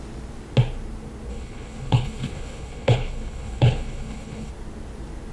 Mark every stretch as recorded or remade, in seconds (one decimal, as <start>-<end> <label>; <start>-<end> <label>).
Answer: 0.0-1.3 recorded; 1.3-4.5 remade; 4.5-5.3 recorded